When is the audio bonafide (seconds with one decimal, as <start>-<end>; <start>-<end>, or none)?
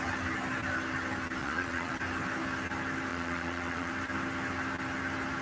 0.0-1.4; 1.9-3.1; 3.9-5.4